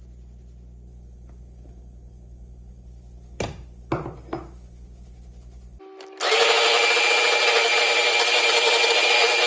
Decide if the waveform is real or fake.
real